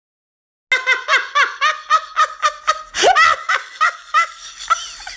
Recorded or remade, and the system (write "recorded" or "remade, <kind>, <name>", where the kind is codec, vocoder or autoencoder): recorded